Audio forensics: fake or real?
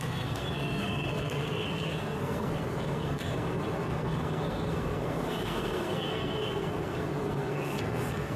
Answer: fake